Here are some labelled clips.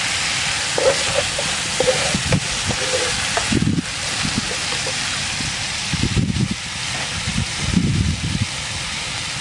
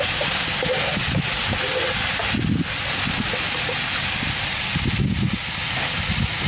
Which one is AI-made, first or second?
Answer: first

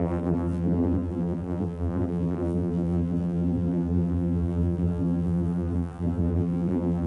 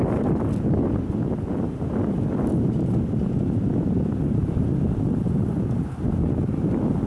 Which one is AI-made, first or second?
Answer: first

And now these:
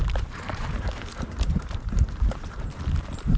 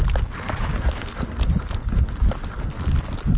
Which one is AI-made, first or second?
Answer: first